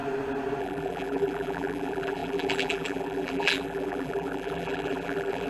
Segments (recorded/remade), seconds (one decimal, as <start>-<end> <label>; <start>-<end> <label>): 0.0-0.6 recorded; 0.6-5.5 remade